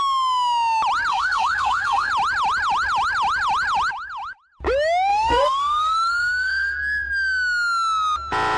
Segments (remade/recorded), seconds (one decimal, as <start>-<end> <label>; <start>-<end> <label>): 0.0-1.1 recorded; 1.1-2.1 remade; 2.1-5.1 recorded; 5.1-6.8 remade; 6.8-8.6 recorded